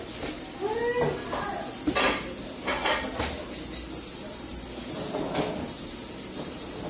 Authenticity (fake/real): real